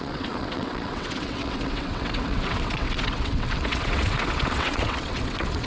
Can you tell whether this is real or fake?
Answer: fake